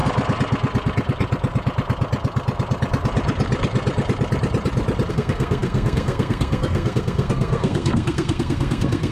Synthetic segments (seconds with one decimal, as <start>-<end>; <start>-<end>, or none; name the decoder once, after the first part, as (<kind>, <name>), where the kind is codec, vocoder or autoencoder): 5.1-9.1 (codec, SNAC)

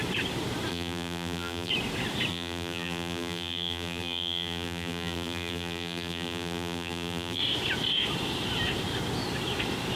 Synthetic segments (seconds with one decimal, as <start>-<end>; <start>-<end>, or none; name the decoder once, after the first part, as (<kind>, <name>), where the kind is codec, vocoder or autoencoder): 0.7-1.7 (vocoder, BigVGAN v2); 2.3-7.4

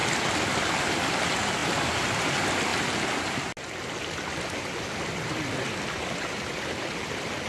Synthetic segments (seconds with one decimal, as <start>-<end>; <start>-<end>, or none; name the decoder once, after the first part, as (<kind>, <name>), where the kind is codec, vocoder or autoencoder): none

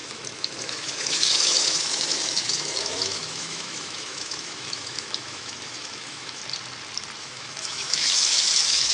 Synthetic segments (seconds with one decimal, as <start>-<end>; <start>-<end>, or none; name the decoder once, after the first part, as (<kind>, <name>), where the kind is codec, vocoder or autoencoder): 0.0-6.4 (autoencoder, DAC-VAE); 7.2-8.9

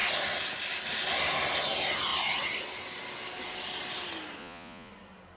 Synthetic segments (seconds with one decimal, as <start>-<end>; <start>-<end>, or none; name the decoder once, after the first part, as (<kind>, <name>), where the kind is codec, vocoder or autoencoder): 4.4-4.9 (vocoder, Vocos)

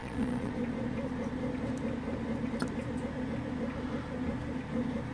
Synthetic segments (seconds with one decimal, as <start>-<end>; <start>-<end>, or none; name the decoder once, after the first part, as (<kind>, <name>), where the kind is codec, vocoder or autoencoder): 0.0-0.5 (vocoder, Vocos)

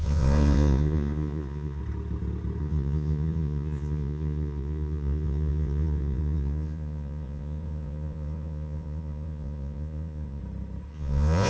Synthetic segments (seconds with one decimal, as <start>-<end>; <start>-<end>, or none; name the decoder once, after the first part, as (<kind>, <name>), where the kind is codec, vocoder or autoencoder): 0.0-1.8 (vocoder, Vocos); 2.6-10.4; 10.9-11.5